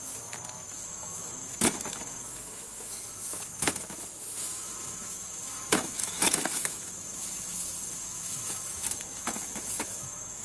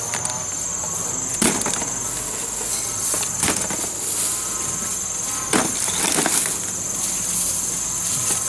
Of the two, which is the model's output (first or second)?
first